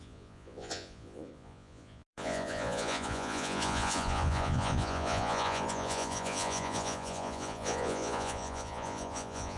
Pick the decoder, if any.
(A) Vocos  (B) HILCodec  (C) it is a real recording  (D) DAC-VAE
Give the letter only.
A